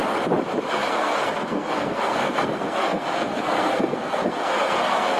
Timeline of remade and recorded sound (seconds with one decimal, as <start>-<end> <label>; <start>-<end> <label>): 0.0-0.7 recorded; 0.7-5.2 remade